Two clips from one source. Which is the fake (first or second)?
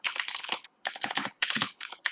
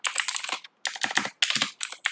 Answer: first